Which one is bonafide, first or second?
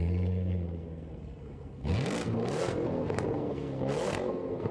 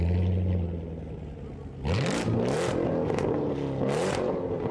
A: second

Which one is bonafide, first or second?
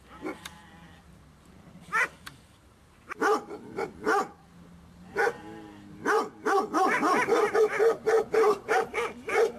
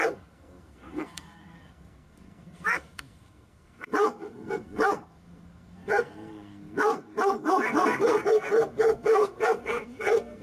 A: first